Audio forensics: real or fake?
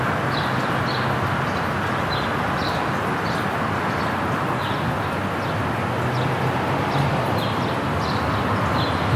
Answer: real